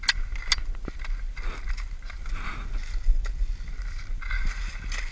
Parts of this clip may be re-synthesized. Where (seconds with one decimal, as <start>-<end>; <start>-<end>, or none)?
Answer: none